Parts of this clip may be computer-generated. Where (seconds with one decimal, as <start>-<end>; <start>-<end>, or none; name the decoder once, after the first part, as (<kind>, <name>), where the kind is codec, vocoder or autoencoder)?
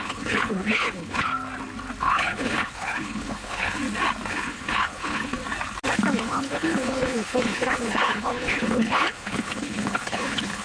0.0-1.3 (codec, HILCodec); 2.0-3.8; 4.3-5.4; 6.2-10.6